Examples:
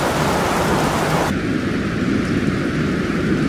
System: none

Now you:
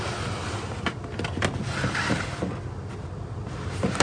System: none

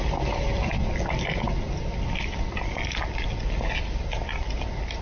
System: none